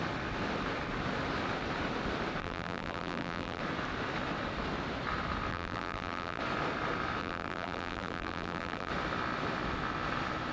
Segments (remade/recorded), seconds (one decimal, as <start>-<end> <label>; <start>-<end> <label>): 0.0-2.4 recorded; 2.4-3.6 remade; 3.6-5.5 recorded; 5.5-6.4 remade; 6.4-7.2 recorded; 7.2-8.9 remade; 8.9-10.5 recorded